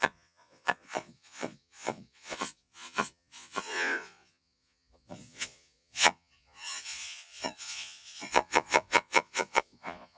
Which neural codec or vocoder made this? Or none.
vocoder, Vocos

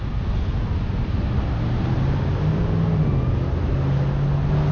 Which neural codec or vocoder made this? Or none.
none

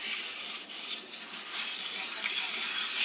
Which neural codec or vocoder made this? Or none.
none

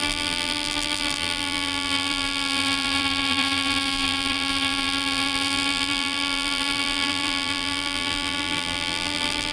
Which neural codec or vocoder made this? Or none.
vocoder, BigVGAN v2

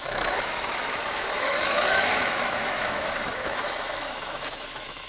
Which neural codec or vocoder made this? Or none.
autoencoder, DAC-VAE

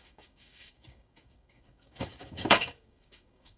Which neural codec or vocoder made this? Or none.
codec, DAC